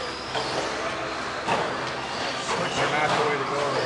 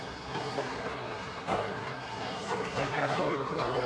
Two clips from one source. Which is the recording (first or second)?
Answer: first